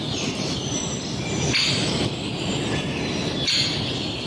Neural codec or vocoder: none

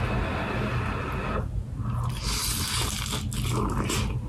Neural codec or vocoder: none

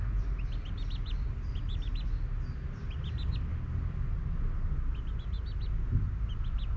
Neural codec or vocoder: none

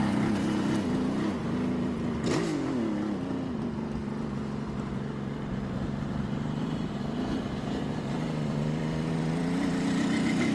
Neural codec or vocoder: none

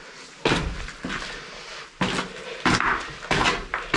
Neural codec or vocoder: none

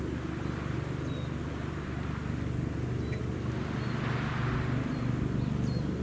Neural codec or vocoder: none